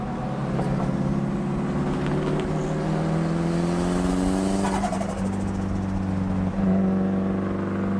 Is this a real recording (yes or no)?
yes